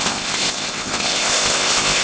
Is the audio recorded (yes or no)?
no